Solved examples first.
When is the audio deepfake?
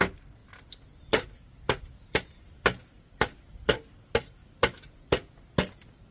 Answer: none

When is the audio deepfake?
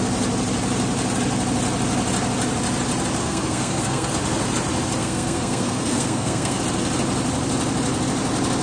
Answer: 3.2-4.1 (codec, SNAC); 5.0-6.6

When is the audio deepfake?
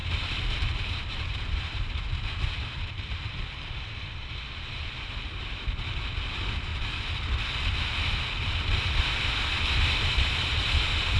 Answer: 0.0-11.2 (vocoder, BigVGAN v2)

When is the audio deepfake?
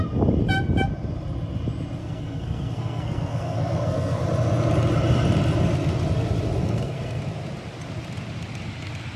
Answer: 2.0-4.2 (codec, SNAC); 6.6-7.2